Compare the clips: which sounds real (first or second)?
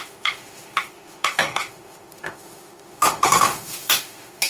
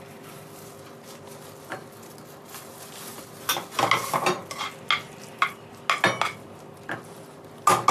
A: second